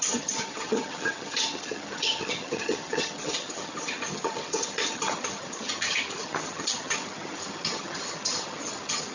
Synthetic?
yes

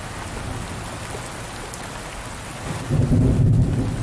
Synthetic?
no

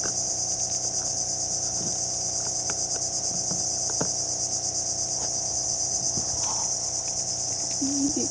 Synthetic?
no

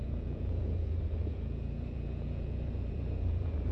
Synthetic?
yes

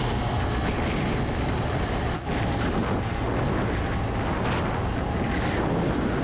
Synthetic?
no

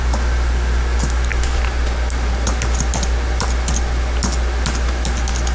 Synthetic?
no